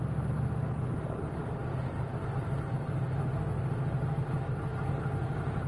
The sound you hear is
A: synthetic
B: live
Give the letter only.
B